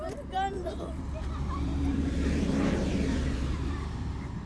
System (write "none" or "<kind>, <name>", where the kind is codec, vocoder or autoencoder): vocoder, BigVGAN v2